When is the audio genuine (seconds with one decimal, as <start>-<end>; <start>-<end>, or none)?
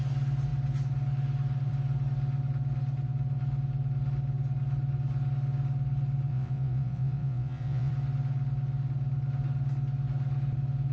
0.0-6.3; 7.9-10.9